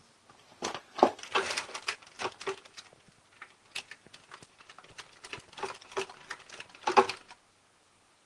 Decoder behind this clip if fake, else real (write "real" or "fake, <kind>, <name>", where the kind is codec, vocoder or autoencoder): real